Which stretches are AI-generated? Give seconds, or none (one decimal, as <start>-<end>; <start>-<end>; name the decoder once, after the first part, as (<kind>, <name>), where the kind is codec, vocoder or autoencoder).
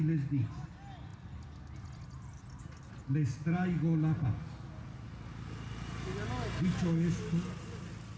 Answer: none